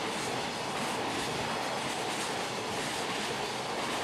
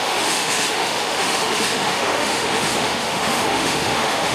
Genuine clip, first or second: first